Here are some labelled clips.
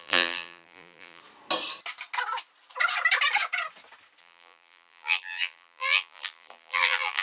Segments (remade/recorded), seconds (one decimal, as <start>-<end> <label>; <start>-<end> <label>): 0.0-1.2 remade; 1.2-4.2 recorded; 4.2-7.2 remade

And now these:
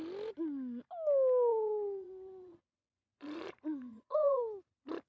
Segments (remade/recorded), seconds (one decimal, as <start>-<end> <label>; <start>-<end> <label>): 0.0-1.5 recorded; 1.5-4.6 remade; 4.6-5.1 recorded

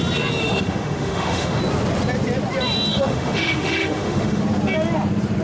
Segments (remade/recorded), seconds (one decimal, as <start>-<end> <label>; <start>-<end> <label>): 0.0-0.4 recorded; 0.4-1.6 remade; 1.6-2.9 recorded; 2.9-4.4 remade; 4.4-5.4 recorded

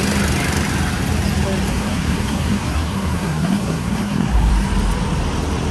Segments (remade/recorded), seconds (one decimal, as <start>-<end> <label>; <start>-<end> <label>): 0.0-1.7 recorded; 1.7-4.5 remade; 4.5-5.7 recorded

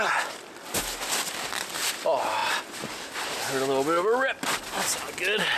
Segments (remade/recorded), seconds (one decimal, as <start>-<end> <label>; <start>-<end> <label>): 0.0-5.6 recorded

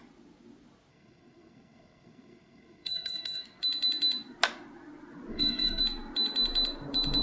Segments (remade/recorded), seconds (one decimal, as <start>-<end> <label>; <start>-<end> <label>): 0.0-0.9 recorded; 0.9-3.6 remade; 3.6-5.3 recorded; 5.3-5.8 remade; 5.8-7.2 recorded

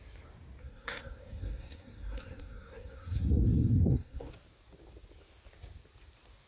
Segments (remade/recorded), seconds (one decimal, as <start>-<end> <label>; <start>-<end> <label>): 0.0-0.6 recorded; 0.6-4.3 remade; 4.3-6.5 recorded